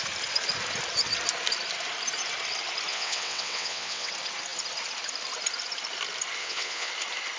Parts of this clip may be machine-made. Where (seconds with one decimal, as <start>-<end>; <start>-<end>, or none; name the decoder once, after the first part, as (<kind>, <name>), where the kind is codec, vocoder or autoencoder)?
2.9-4.1 (vocoder, WaveNeXt); 6.4-6.9